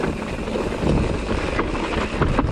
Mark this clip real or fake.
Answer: real